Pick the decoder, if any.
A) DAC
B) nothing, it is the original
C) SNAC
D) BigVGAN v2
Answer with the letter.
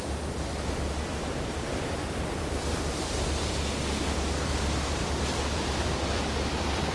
D